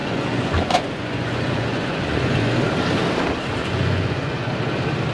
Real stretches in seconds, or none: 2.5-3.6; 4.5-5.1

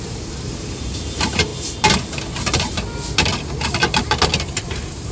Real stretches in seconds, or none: 1.5-4.6

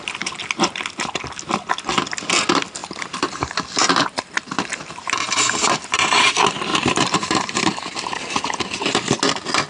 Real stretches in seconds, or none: 0.0-2.8; 6.3-6.7; 9.1-9.7

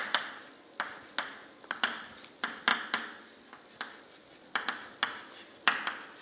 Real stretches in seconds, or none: 0.0-6.2

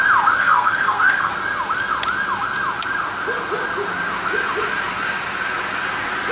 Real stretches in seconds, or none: 0.0-0.4; 1.3-6.3

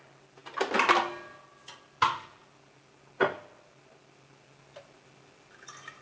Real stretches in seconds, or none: 0.0-6.0